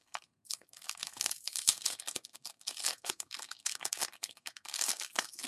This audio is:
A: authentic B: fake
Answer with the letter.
B